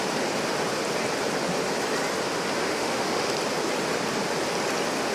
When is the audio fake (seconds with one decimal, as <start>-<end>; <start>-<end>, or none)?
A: 2.6-3.3